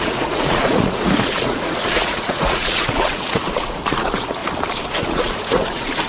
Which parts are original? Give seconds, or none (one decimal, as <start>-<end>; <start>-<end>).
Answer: 4.4-4.9